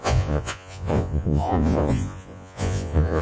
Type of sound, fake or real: fake